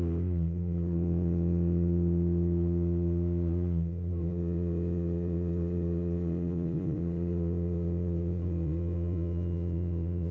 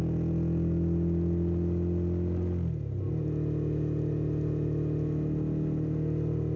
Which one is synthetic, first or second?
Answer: first